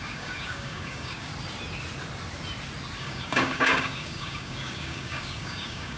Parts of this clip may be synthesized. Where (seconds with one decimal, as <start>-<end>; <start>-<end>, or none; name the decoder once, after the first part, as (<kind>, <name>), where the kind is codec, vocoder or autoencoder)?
0.0-1.3 (codec, DAC); 3.0-6.0